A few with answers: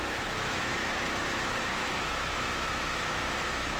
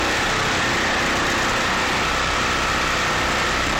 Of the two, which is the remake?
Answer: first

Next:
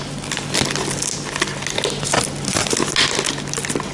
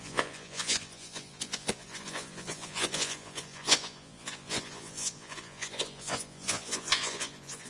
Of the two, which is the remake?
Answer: second